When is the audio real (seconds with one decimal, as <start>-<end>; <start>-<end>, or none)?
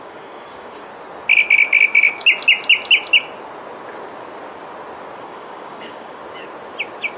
0.9-5.2; 6.2-7.2